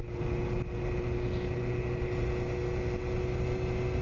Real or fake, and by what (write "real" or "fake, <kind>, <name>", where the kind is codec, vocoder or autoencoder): real